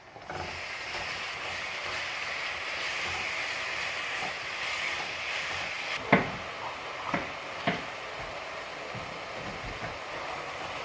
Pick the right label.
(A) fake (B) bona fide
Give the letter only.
B